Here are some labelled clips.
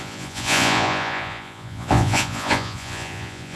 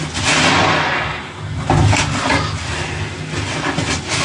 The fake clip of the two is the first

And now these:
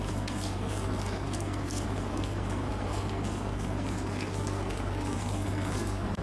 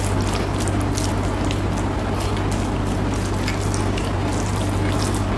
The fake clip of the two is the first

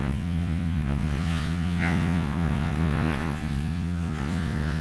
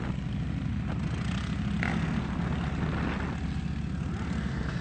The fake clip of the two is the first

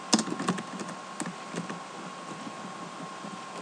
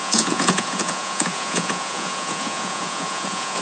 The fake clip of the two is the second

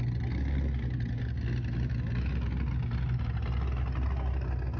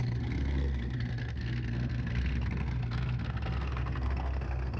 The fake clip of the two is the second